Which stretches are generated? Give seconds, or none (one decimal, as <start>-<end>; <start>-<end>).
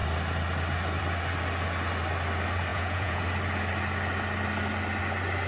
2.7-3.2